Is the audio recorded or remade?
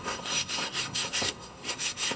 remade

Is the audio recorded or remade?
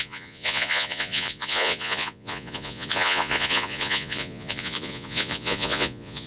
remade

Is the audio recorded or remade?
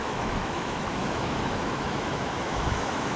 remade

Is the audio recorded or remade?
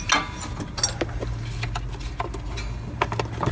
recorded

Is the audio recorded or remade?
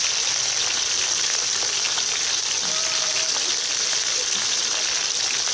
recorded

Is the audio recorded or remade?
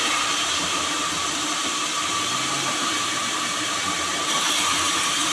remade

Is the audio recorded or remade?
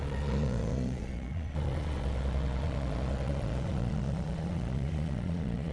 remade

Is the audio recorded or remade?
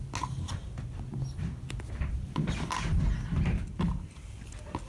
recorded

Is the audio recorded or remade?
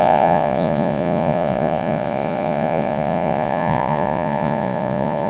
remade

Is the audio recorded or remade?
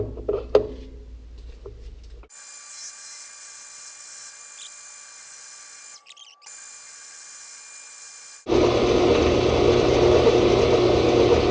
recorded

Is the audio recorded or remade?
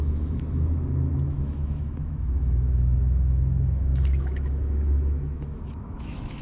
remade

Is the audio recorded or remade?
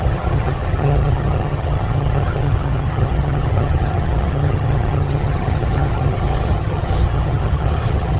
remade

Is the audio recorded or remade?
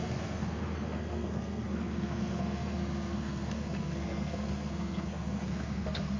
remade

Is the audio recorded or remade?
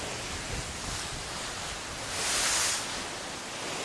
recorded